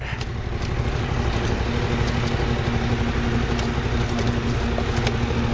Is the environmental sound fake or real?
real